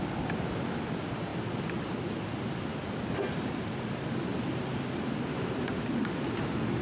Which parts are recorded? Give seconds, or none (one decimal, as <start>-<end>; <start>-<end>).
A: 0.0-6.8